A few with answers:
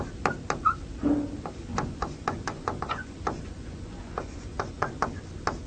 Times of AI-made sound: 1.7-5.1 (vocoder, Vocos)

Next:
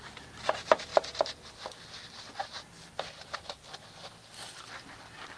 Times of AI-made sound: none